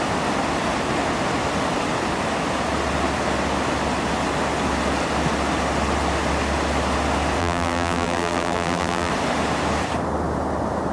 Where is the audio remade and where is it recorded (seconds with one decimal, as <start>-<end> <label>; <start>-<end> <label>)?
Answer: 0.0-7.4 recorded; 7.4-9.1 remade; 9.1-10.9 recorded